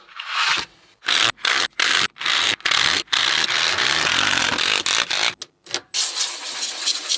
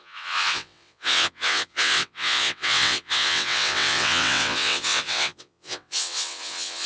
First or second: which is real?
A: first